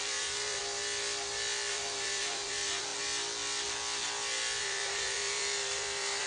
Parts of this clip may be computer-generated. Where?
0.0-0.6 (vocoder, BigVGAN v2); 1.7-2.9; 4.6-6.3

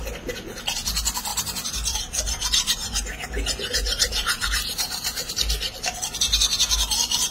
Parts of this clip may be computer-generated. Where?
1.3-5.3 (vocoder, BigVGAN v2)

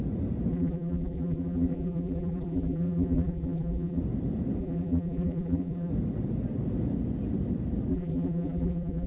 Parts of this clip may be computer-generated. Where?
0.5-4.0 (vocoder, BigVGAN v2); 4.6-5.9; 7.9-9.1

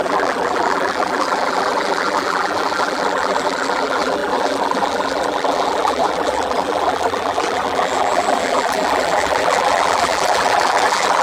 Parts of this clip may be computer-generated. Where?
0.0-11.2 (vocoder, BigVGAN v2)

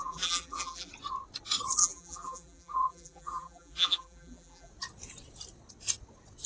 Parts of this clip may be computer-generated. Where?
0.0-0.9 (vocoder, BigVGAN v2); 1.8-4.7

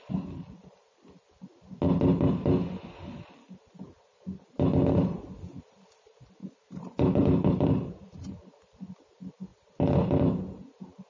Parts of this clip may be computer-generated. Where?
6.4-8.4 (vocoder, BigVGAN v2)

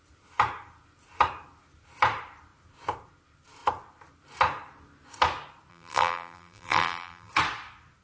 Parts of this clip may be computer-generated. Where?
5.7-7.3 (vocoder, BigVGAN v2)

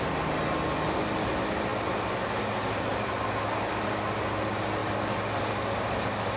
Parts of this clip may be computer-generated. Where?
none